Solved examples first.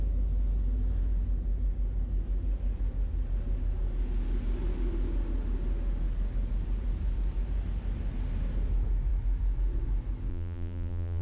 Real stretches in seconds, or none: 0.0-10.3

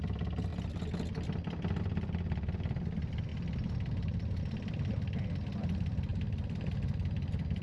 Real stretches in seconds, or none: 0.0-7.6

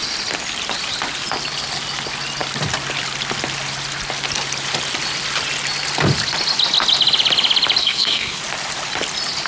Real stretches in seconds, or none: 0.0-7.8; 8.4-9.5